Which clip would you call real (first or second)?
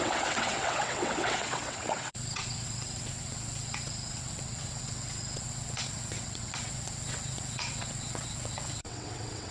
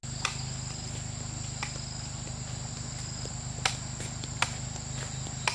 second